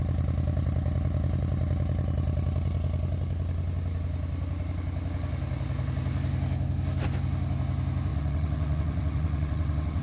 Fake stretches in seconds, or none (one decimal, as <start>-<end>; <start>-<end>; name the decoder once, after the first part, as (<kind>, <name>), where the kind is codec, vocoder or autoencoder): 8.1-10.0 (vocoder, WaveNeXt)